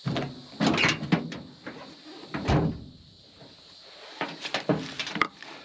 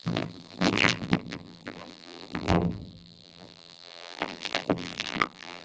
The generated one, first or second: second